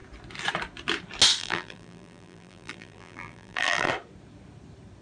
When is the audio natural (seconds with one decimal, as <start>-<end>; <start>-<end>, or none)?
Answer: 0.0-1.4; 3.9-5.0